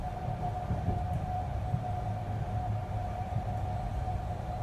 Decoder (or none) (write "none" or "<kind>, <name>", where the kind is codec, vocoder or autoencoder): vocoder, BigVGAN v2